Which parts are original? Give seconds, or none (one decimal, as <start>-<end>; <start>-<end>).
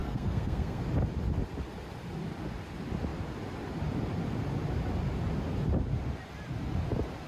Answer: 0.8-7.3